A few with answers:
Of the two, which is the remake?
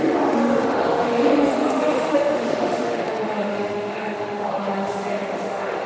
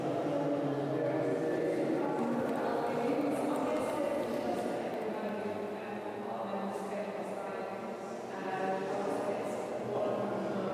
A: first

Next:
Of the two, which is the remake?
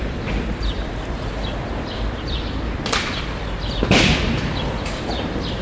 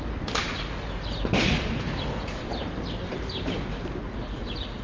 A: first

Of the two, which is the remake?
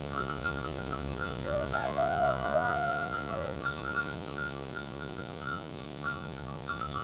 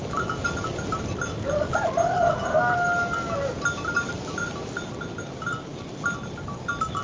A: first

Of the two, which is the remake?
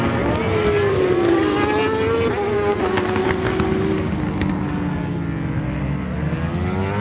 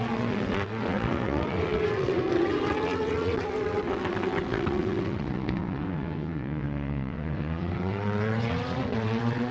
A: second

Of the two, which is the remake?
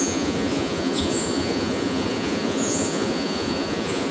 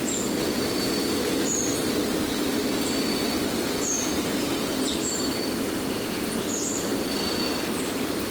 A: first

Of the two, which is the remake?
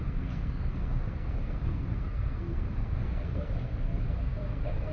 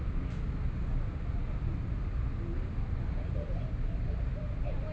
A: first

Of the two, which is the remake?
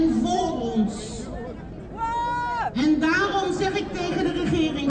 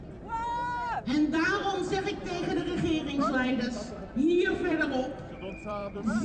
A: second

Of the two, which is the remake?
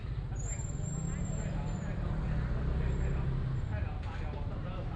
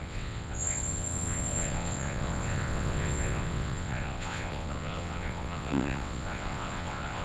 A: second